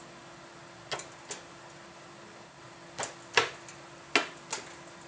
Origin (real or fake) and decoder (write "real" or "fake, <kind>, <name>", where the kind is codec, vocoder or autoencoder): real